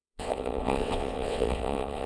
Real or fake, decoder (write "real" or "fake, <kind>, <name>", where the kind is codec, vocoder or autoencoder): fake, vocoder, WaveNeXt